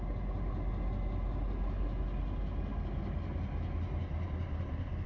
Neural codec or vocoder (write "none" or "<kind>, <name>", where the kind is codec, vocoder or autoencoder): none